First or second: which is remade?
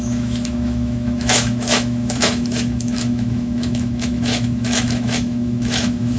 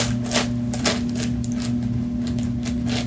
first